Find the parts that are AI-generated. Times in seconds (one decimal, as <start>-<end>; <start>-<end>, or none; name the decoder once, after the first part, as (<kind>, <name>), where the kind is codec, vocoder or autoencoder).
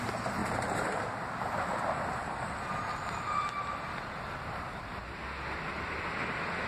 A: 0.4-1.2 (vocoder, BigVGAN v2)